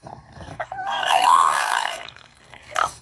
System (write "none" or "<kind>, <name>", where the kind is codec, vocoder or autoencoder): codec, SNAC